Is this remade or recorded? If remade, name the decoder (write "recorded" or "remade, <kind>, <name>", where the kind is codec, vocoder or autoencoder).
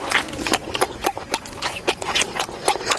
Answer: remade, vocoder, Vocos